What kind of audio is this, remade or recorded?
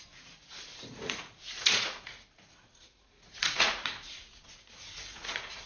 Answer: remade